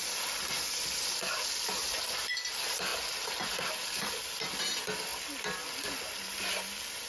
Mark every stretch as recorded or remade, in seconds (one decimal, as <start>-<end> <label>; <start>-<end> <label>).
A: 0.0-7.1 recorded